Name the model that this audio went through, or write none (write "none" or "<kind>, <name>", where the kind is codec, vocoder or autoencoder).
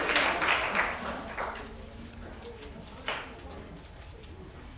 none